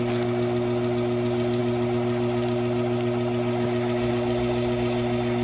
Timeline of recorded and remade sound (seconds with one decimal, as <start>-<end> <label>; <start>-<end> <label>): 0.0-5.4 recorded